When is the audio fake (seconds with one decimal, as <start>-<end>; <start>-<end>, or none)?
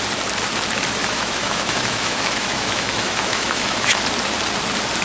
1.0-4.0